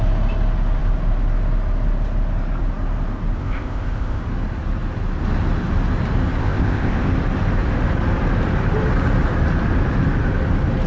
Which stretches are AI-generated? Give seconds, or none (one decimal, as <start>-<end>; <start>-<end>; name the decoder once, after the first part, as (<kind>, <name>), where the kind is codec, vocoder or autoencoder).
3.4-4.2 (codec, ZipCodec); 6.4-7.1